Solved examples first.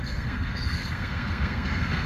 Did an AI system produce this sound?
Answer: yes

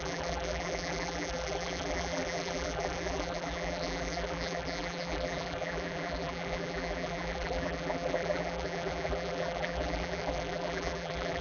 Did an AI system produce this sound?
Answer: yes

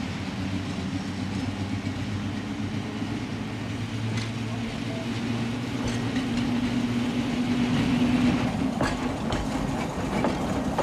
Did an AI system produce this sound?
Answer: no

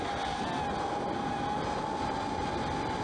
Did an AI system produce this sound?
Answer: no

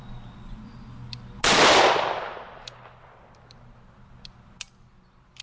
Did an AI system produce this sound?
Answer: no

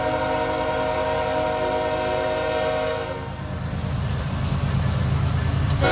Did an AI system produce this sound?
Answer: no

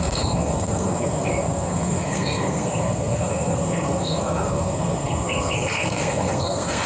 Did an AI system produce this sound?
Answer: yes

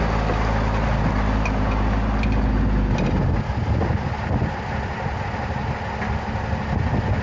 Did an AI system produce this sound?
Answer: no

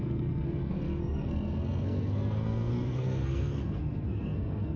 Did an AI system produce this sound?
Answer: yes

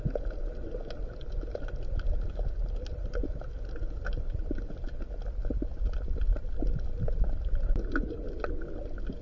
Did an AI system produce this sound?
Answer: no